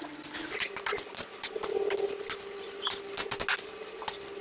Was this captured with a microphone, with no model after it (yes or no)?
yes